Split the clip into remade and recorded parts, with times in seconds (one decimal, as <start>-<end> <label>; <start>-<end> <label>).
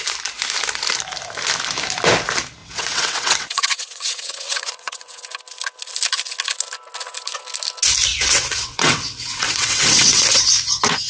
0.0-2.6 recorded; 2.6-5.2 remade; 5.2-8.1 recorded; 8.1-10.4 remade; 10.4-11.1 recorded